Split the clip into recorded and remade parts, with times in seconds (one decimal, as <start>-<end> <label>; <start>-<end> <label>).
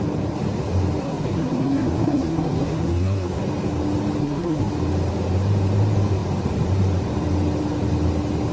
0.0-1.0 recorded; 1.0-3.4 remade; 3.4-4.2 recorded; 4.2-4.7 remade; 4.7-8.5 recorded